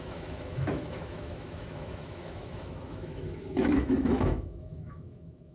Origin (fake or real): fake